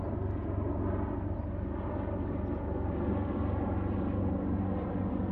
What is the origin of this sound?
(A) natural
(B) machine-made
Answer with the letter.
A